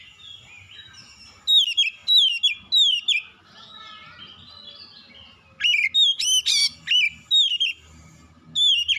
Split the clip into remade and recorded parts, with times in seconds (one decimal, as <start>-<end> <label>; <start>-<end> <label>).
0.0-9.0 recorded